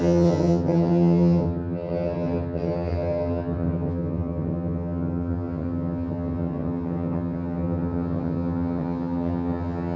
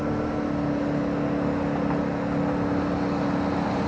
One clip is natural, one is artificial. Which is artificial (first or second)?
first